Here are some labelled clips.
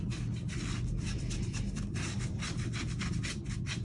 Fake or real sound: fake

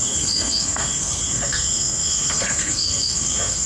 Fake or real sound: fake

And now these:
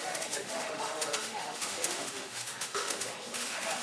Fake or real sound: fake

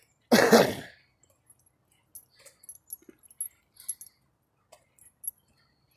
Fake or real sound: real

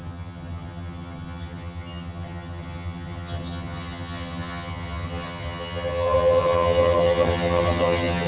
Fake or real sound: fake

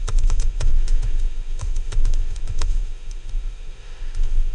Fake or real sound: fake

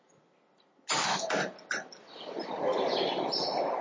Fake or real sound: real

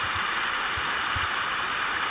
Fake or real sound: real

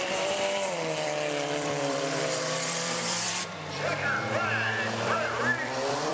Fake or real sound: fake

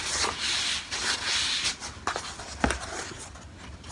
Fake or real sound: real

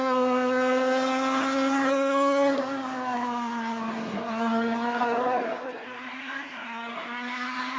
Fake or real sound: fake